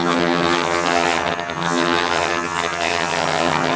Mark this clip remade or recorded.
remade